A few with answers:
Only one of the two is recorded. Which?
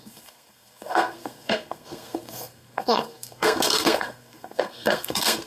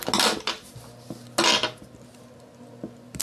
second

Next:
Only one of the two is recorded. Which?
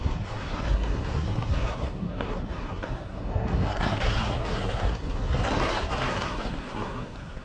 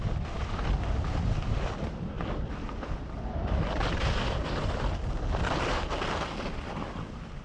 second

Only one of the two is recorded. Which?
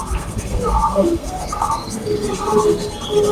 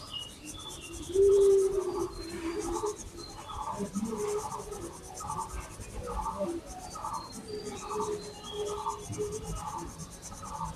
second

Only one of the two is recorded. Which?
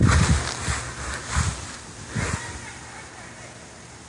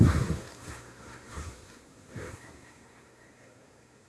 first